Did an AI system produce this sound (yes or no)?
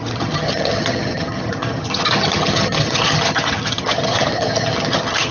yes